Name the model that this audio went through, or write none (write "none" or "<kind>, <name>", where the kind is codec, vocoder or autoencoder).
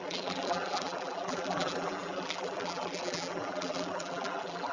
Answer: vocoder, BigVGAN v2